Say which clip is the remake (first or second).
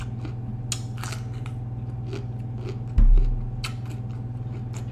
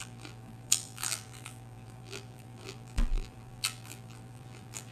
second